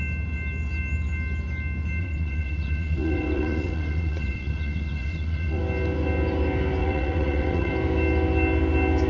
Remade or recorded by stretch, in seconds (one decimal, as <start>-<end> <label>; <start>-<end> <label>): 0.0-2.0 recorded; 2.0-5.6 remade; 5.6-6.8 recorded; 6.8-7.7 remade; 7.7-9.1 recorded